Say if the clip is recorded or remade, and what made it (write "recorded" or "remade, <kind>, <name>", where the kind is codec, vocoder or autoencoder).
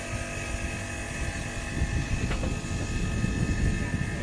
recorded